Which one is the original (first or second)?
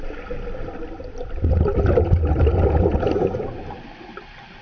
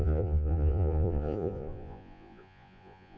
first